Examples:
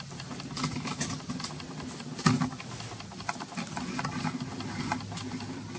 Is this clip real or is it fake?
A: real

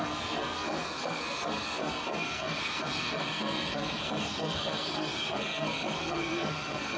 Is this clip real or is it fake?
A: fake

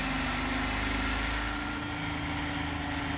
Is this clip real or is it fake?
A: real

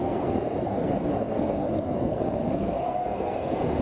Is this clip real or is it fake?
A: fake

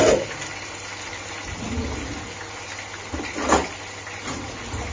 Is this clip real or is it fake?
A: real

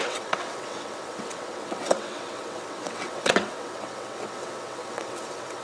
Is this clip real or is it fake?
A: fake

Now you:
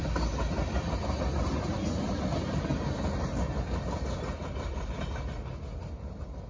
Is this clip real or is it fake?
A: real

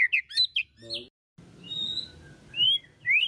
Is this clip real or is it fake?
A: real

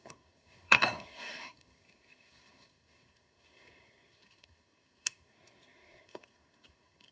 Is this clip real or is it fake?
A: fake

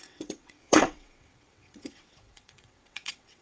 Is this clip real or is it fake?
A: fake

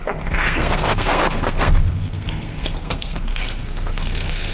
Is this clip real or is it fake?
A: fake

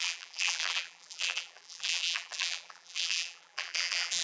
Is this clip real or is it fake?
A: fake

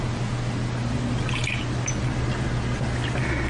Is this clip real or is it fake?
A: real